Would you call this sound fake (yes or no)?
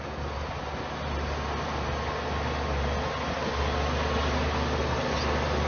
no